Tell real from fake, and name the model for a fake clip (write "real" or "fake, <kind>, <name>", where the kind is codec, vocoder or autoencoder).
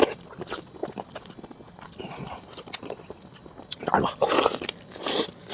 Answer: real